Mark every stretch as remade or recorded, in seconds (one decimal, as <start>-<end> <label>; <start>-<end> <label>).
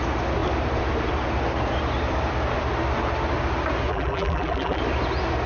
0.0-3.9 recorded; 3.9-4.8 remade; 4.8-5.5 recorded